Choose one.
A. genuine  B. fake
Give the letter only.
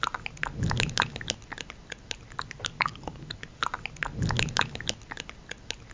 A